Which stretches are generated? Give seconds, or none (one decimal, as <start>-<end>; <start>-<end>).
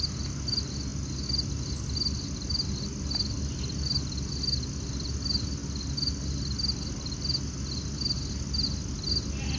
none